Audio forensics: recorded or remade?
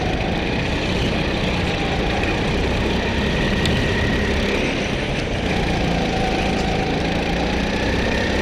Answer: recorded